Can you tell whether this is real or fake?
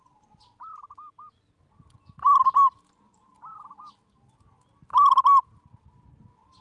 real